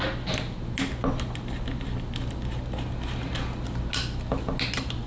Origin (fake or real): real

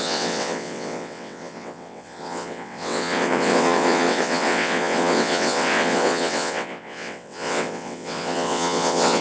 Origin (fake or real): fake